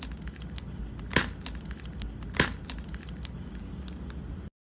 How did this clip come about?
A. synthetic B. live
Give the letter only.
B